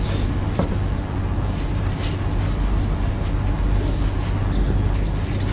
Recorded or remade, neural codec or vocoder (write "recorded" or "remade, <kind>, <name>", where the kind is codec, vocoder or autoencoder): recorded